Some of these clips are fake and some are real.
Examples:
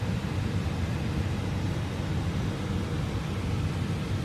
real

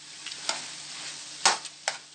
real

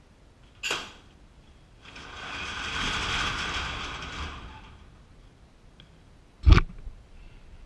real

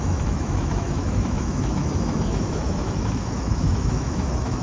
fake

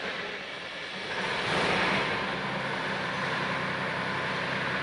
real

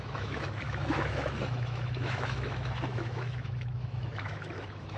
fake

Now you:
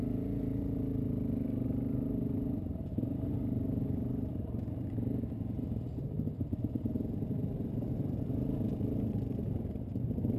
real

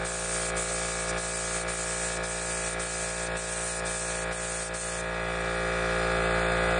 real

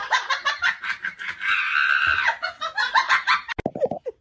real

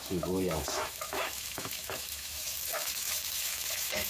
fake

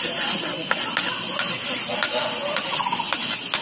real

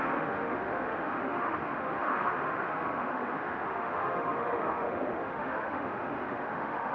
fake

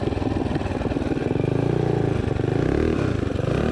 real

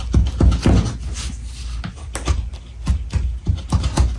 real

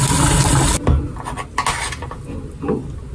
real